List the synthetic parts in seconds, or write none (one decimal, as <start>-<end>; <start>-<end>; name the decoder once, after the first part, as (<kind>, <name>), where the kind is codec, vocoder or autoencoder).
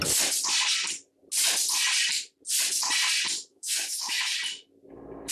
3.5-4.2 (autoencoder, DAC-VAE)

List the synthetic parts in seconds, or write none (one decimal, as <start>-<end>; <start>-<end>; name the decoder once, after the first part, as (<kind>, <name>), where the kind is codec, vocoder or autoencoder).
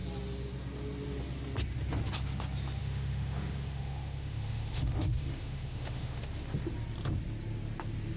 2.8-6.2 (autoencoder, DAC-VAE)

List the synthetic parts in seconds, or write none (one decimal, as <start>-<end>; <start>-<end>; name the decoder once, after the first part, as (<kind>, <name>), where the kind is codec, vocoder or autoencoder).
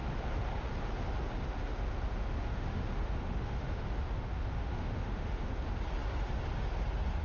2.2-5.5 (autoencoder, DAC-VAE)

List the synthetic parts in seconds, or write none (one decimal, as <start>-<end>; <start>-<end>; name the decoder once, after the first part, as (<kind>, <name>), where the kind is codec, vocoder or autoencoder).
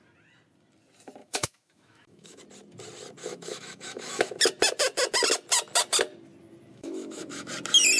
1.2-2.4 (autoencoder, DAC-VAE); 3.2-4.4; 6.7-7.5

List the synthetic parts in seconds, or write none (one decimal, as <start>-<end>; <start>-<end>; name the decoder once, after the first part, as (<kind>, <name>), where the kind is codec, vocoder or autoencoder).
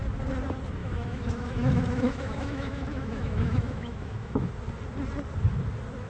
0.8-4.5 (autoencoder, DAC-VAE)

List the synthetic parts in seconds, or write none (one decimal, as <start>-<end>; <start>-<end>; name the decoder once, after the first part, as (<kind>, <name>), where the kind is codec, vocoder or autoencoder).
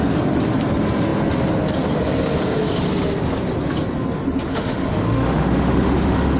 4.5-6.4 (autoencoder, DAC-VAE)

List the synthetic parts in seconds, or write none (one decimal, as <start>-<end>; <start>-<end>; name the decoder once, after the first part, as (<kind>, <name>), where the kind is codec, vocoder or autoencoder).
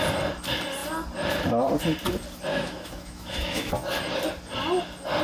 2.5-3.7 (autoencoder, DAC-VAE)